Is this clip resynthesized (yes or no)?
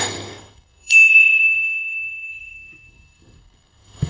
yes